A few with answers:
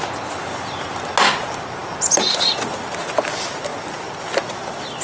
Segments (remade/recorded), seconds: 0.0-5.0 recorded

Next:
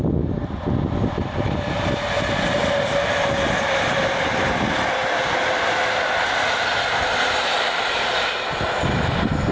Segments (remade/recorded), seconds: 0.0-9.5 recorded

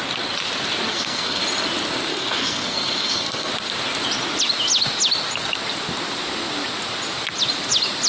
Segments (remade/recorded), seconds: 0.0-0.9 recorded; 0.9-1.4 remade; 1.4-2.1 recorded; 2.1-3.5 remade; 3.5-8.1 recorded

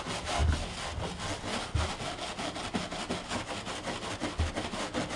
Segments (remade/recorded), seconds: 0.0-5.2 recorded

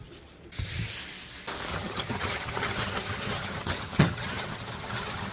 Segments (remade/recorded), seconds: 0.0-1.7 recorded; 1.7-5.3 remade